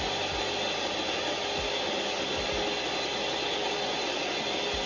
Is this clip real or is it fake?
real